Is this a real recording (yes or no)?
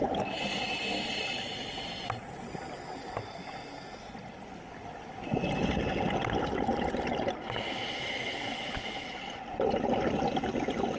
yes